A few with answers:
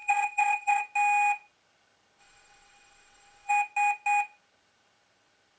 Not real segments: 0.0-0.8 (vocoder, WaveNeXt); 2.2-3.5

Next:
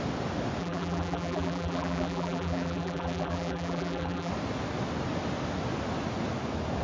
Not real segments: 0.6-4.3 (vocoder, BigVGAN v2)

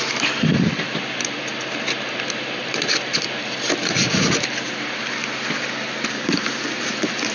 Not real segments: none

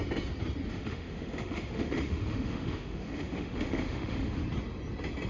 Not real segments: 0.7-4.4 (autoencoder, DAC-VAE)

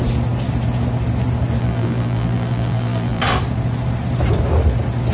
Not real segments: 1.6-3.2 (vocoder, BigVGAN v2)

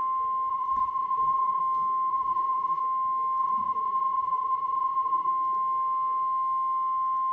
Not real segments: 0.5-1.6 (vocoder, Vocos); 2.1-2.8; 3.4-5.3

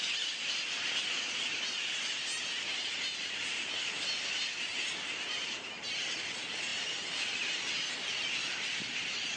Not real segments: none